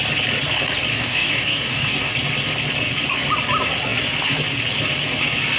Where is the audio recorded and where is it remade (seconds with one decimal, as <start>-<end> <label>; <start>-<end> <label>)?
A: 0.0-0.9 recorded; 0.9-2.1 remade; 2.1-5.6 recorded